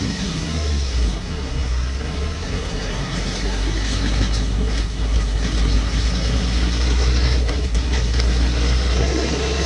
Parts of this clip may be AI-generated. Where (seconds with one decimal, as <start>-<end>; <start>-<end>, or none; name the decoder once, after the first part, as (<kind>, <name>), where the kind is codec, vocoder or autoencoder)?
0.0-9.7 (codec, SNAC)